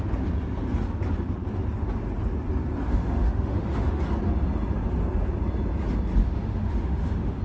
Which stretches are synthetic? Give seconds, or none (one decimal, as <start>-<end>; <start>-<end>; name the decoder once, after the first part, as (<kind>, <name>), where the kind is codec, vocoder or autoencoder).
2.9-4.0 (autoencoder, DAC-VAE); 6.2-7.4